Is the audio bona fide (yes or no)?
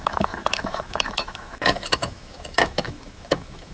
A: no